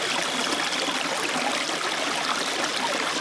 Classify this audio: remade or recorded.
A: recorded